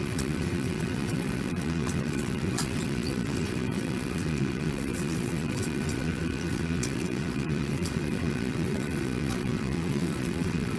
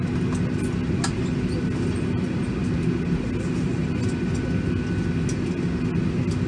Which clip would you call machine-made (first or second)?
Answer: first